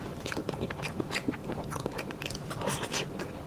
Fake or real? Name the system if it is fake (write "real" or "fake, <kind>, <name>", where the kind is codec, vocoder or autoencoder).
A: fake, vocoder, BigVGAN v2